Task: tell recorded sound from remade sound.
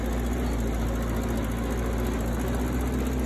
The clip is recorded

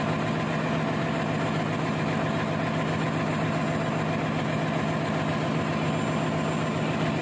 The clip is recorded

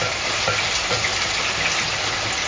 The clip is recorded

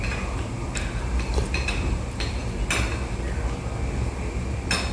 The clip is recorded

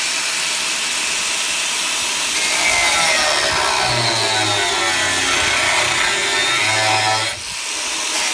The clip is recorded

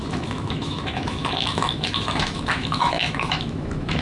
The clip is remade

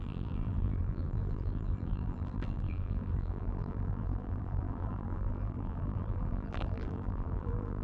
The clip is remade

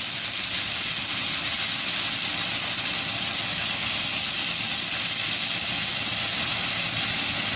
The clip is recorded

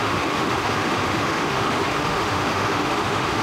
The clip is remade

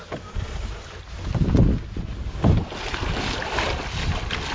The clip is recorded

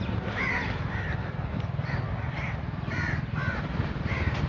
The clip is remade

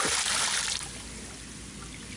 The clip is remade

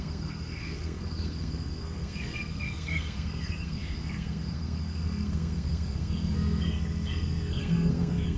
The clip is remade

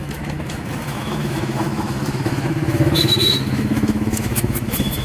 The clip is remade